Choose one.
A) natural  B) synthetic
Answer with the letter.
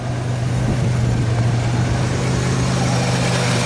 A